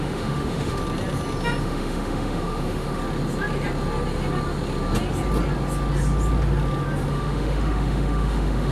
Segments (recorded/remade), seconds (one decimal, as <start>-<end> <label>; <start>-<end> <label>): 0.0-0.8 remade; 0.8-1.6 recorded; 1.6-3.0 remade; 3.0-7.1 recorded; 7.1-8.7 remade